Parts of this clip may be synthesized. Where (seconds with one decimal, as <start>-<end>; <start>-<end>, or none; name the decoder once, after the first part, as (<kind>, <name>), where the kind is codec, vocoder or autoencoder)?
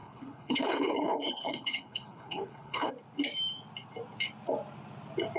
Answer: 0.0-2.9 (codec, HILCodec)